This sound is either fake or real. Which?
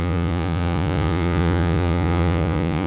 fake